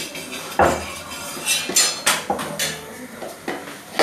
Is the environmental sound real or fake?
real